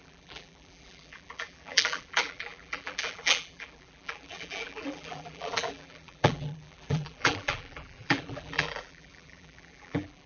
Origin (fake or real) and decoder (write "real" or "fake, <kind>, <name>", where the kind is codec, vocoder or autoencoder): fake, vocoder, BigVGAN v2